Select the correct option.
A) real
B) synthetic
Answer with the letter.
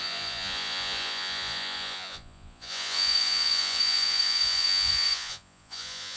B